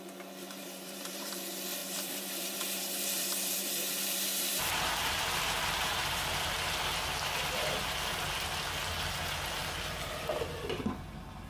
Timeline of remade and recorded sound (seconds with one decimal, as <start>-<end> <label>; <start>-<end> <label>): 0.0-0.4 recorded; 0.4-1.3 remade; 1.3-1.8 recorded; 1.8-6.8 remade; 6.8-11.5 recorded

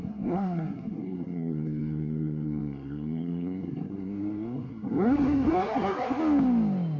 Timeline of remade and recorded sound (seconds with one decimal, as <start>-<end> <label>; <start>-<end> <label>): 0.0-6.2 remade; 6.2-7.0 recorded

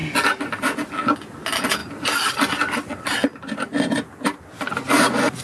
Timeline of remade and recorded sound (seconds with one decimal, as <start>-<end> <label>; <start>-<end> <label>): 0.0-1.8 recorded; 1.8-2.3 remade; 2.3-5.4 recorded

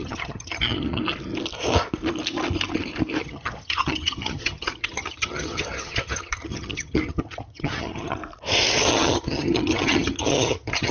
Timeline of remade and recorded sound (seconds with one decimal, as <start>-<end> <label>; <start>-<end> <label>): 0.0-1.0 remade; 1.0-3.2 recorded; 3.2-8.2 remade; 8.2-8.9 recorded; 8.9-10.9 remade